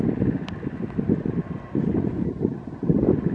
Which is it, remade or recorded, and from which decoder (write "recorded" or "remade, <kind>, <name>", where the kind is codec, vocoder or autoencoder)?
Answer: recorded